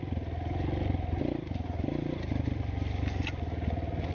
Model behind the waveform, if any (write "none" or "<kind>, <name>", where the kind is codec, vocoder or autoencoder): none